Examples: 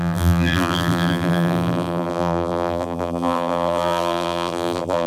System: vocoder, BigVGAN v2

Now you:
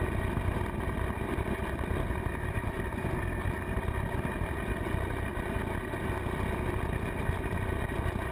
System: none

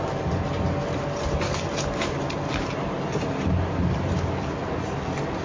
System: none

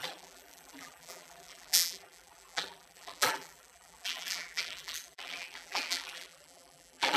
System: vocoder, BigVGAN v2